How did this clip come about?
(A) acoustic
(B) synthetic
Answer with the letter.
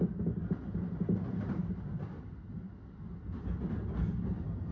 A